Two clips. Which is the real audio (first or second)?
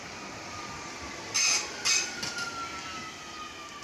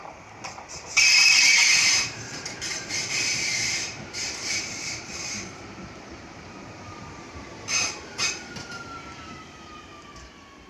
first